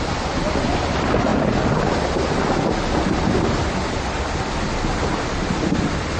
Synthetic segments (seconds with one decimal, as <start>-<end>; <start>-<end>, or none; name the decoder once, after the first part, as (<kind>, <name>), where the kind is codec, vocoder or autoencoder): none